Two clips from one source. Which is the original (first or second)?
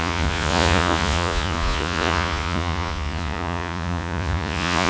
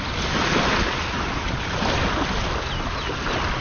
second